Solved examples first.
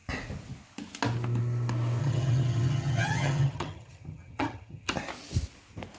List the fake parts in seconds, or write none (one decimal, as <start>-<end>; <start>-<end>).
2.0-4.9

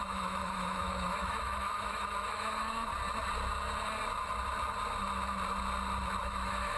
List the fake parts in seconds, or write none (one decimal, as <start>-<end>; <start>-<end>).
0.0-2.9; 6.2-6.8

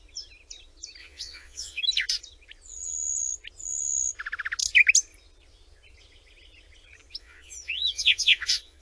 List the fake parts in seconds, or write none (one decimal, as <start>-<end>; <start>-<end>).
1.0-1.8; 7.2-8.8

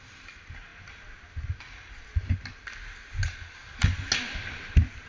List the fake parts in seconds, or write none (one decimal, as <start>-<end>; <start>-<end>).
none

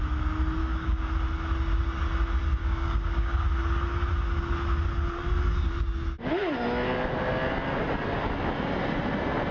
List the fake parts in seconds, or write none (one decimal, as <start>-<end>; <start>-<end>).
0.6-1.1; 2.6-3.5